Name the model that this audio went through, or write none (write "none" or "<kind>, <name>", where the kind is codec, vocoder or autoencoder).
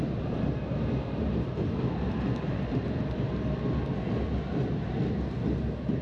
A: none